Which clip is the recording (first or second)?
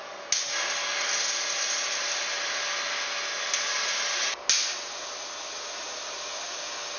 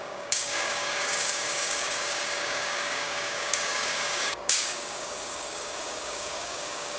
first